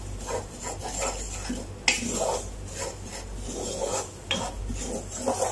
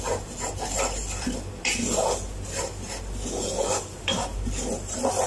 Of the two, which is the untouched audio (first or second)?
first